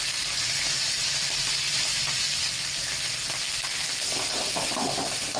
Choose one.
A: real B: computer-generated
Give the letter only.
A